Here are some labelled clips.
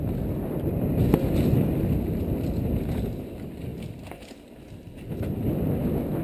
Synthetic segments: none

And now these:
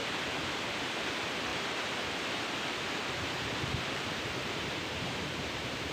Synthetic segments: 0.0-5.9 (vocoder, BigVGAN v2)

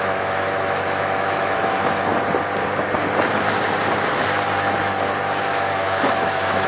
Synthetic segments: 0.0-2.1 (autoencoder, DAC-VAE); 5.4-6.7

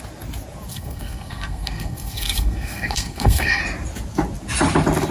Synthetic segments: 0.7-3.6 (codec, SNAC)

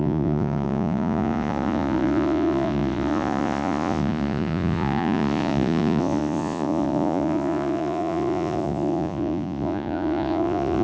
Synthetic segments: 0.0-10.8 (vocoder, Vocos)

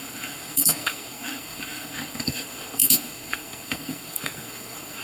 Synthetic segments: 0.0-5.0 (codec, SNAC)

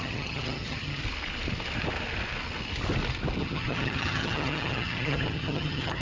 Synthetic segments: 0.0-1.0 (vocoder, HiFi-GAN); 3.4-6.0